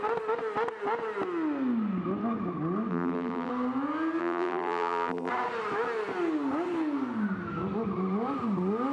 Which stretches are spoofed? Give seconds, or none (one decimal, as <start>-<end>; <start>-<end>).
2.9-3.5; 4.2-5.3